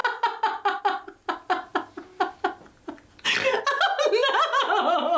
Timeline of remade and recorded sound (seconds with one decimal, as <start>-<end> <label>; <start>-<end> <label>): 0.0-5.2 recorded